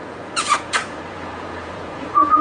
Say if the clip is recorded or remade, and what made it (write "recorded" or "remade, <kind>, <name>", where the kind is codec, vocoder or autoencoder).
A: remade, vocoder, Vocos